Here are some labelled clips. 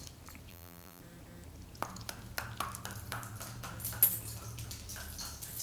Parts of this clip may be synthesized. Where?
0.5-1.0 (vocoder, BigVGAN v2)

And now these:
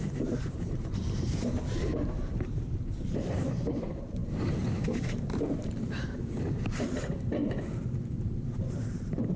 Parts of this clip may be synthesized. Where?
0.0-7.4 (vocoder, BigVGAN v2); 8.1-9.4

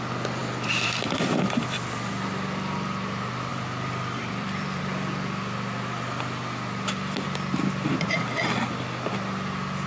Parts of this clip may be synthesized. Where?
0.4-2.1 (vocoder, BigVGAN v2); 3.5-4.8

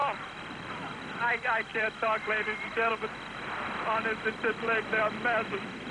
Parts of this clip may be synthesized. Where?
1.7-2.9 (vocoder, BigVGAN v2)

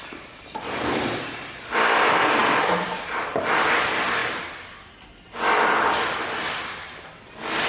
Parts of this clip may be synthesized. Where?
4.2-4.7 (vocoder, BigVGAN v2)